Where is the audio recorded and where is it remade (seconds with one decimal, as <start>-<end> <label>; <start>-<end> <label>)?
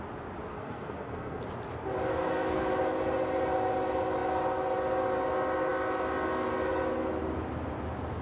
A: 0.0-0.5 recorded; 0.5-1.4 remade; 1.4-2.1 recorded; 2.1-2.7 remade; 2.7-8.2 recorded